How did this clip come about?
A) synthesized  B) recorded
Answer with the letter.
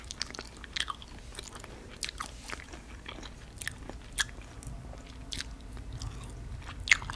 B